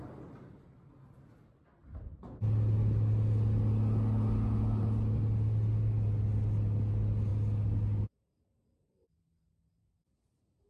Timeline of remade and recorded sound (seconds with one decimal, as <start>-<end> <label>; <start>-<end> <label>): 0.0-10.7 recorded

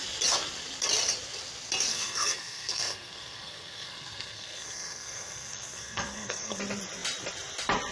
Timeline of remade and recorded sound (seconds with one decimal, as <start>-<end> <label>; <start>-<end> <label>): 0.0-1.9 recorded; 1.9-6.6 remade; 6.6-7.9 recorded

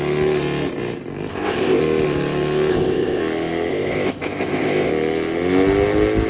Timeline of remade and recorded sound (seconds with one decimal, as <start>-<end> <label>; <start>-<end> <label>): 0.0-1.3 recorded; 1.3-1.8 remade; 1.8-2.7 recorded; 2.7-3.2 remade; 3.2-3.7 recorded; 3.7-4.9 remade; 4.9-6.3 recorded

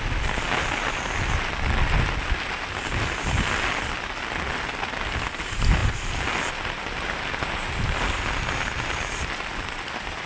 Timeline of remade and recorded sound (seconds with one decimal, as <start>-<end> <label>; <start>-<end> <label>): 0.0-10.3 recorded

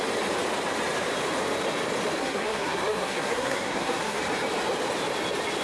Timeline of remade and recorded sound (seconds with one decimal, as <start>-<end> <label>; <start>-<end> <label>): 0.0-2.2 recorded; 2.2-4.2 remade; 4.2-5.6 recorded

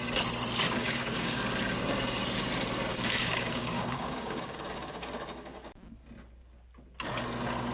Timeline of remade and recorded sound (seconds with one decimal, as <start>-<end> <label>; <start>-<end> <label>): 0.0-0.8 recorded; 0.8-1.4 remade; 1.4-2.9 recorded; 2.9-5.7 remade; 5.7-7.7 recorded

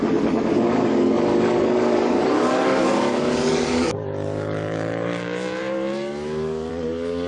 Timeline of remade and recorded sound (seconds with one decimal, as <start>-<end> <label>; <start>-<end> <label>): 0.0-7.3 remade